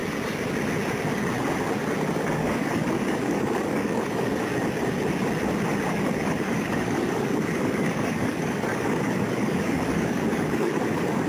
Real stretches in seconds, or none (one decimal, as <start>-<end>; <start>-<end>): 0.0-2.1; 4.5-5.9